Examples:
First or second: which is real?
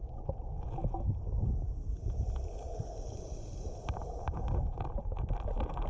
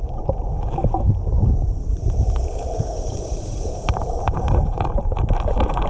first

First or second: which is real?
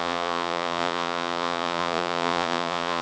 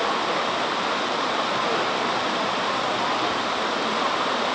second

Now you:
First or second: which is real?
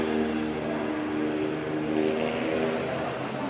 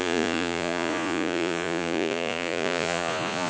first